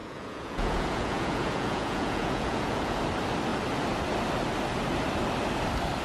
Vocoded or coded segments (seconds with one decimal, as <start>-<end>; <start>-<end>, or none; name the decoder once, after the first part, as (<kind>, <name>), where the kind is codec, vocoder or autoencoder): 0.0-3.0 (vocoder, Vocos)